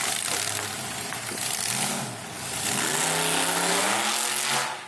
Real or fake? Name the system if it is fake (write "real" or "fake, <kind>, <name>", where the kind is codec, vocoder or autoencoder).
real